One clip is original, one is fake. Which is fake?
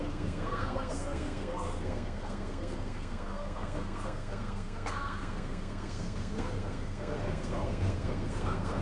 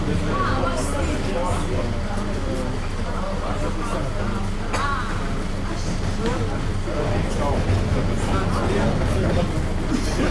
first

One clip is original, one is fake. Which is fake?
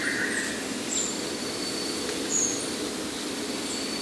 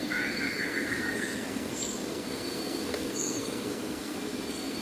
second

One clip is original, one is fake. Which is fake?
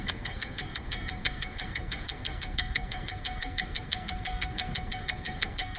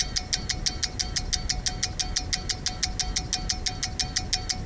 first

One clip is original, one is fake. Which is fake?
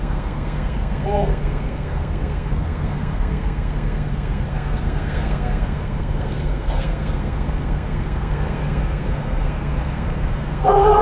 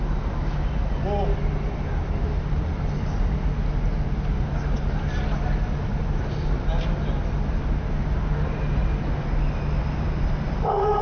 first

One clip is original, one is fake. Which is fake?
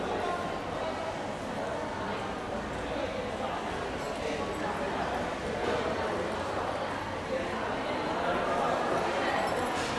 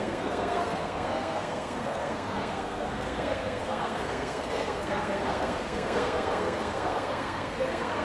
second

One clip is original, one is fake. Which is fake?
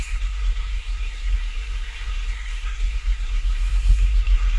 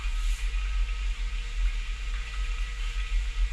first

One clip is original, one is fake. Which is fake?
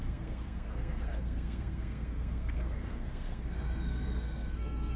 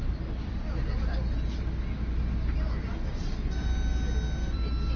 first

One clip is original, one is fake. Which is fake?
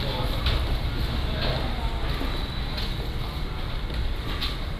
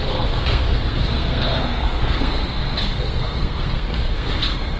second